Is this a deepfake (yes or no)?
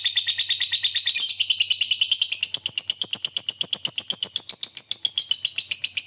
no